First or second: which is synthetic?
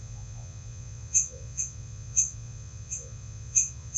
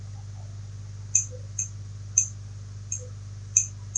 first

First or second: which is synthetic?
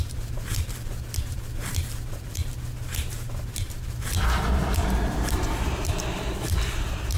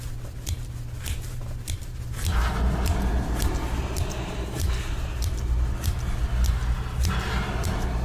first